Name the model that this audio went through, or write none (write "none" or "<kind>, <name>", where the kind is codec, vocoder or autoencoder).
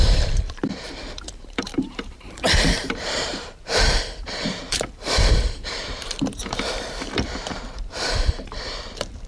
vocoder, BigVGAN v2